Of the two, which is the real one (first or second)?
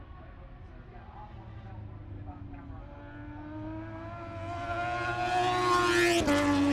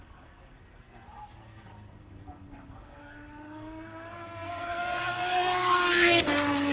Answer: first